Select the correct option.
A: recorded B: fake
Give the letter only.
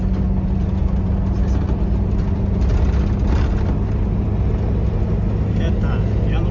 A